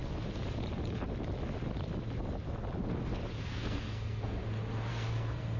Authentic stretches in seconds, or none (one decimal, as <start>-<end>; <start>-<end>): 0.0-3.4; 4.4-4.9

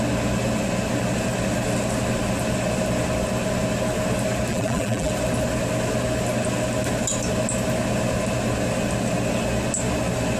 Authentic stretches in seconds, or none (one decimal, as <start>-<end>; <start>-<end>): 0.0-4.5; 5.1-10.4

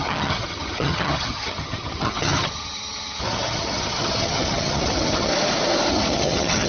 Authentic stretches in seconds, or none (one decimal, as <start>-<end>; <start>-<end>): 5.3-5.9

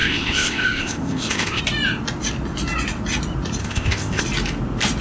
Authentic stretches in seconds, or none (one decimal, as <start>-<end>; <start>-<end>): 1.6-3.6; 4.2-5.0

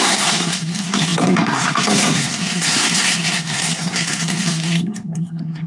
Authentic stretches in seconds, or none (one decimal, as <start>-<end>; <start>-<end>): none

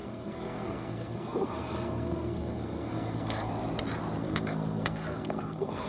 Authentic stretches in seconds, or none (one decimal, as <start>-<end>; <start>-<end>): 3.5-4.2

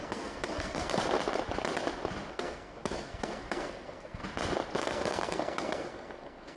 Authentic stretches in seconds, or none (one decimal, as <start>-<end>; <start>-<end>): 1.0-2.3; 4.2-4.8

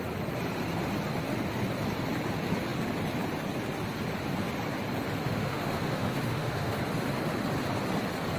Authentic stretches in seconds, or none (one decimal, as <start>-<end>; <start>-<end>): 0.0-5.2; 6.8-8.4